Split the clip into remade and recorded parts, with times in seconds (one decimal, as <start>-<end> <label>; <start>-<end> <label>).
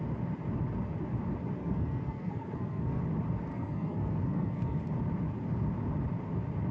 0.0-1.6 recorded; 1.6-3.0 remade; 3.0-3.5 recorded; 3.5-4.8 remade; 4.8-6.7 recorded